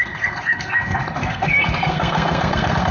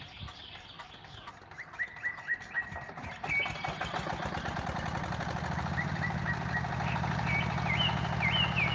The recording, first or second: second